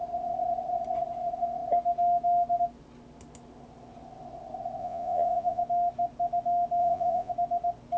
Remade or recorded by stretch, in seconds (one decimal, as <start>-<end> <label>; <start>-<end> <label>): 0.0-4.8 recorded; 4.8-5.6 remade; 5.6-6.8 recorded; 6.8-7.3 remade; 7.3-8.0 recorded